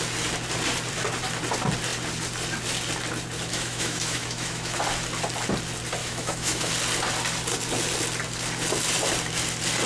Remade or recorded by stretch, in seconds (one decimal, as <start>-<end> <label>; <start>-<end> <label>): 0.0-3.5 recorded; 3.5-4.8 remade; 4.8-6.0 recorded; 6.0-6.7 remade; 6.7-9.9 recorded